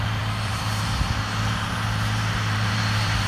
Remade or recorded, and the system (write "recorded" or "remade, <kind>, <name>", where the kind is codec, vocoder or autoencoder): remade, vocoder, BigVGAN v2